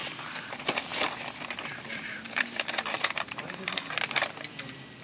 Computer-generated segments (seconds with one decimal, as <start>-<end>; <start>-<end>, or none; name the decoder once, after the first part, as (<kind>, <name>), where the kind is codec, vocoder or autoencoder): 0.0-0.5 (vocoder, BigVGAN v2); 0.9-3.9